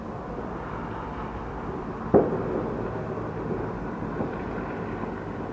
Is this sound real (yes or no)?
yes